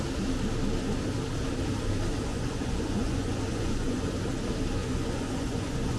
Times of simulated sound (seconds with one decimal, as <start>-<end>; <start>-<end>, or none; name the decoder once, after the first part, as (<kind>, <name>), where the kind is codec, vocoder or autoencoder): 2.3-4.1 (vocoder, Vocos); 4.8-6.0

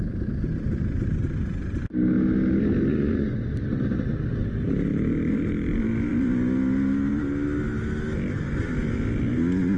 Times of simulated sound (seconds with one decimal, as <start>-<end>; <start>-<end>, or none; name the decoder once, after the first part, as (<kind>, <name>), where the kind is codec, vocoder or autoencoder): 2.9-3.5 (vocoder, Vocos)

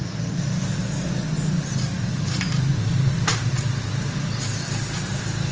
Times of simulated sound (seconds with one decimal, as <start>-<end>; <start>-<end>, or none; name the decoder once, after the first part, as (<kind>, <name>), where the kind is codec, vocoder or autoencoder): none

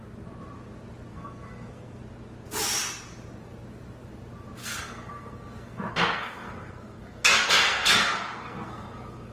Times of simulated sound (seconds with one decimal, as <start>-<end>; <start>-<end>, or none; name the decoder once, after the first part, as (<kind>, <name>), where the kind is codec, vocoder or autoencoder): 1.1-2.0 (codec, SNAC); 4.6-9.3

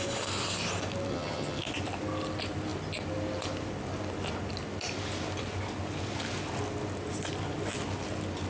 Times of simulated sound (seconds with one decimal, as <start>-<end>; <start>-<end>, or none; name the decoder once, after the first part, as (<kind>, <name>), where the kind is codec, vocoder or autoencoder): 1.1-1.6 (vocoder, HiFi-GAN)